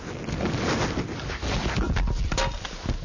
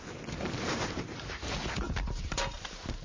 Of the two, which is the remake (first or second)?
second